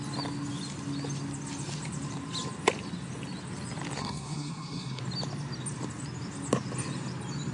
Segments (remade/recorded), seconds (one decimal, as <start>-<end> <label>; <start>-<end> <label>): 0.0-4.0 recorded; 4.0-5.0 remade; 5.0-7.5 recorded